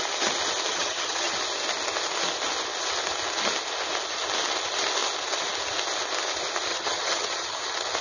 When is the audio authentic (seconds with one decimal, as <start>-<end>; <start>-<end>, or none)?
0.0-0.7; 1.3-6.7; 7.6-8.0